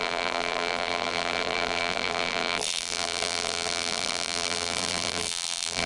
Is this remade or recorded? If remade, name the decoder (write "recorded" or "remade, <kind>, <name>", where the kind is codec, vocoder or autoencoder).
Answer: remade, vocoder, BigVGAN v2